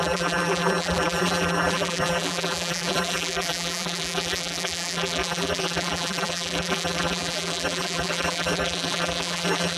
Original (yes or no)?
no